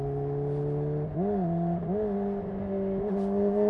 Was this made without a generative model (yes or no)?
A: yes